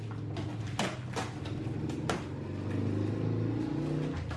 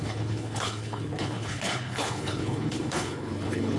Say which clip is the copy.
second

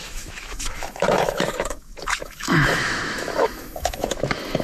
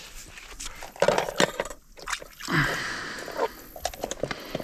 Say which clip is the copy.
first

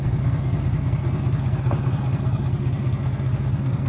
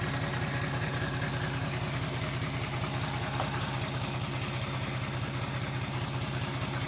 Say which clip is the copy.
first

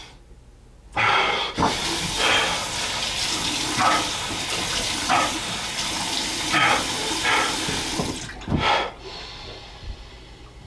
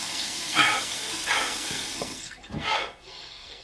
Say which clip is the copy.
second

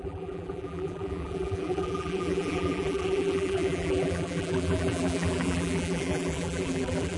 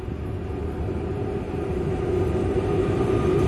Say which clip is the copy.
first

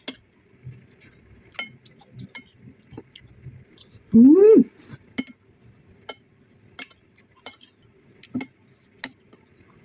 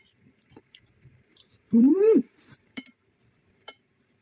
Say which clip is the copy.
second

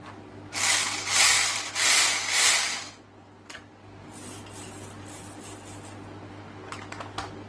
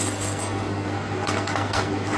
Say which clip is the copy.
second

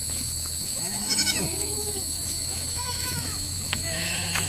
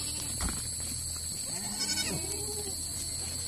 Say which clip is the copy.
first